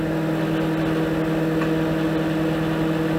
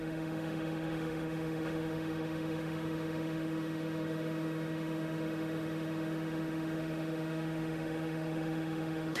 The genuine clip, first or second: first